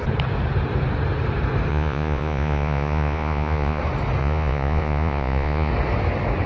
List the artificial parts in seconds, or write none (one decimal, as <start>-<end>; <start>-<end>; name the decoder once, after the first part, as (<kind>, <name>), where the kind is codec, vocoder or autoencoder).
1.7-3.8 (vocoder, Vocos); 4.2-5.7